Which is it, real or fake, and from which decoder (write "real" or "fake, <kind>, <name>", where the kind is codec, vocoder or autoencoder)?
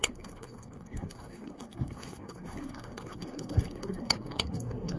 fake, codec, SNAC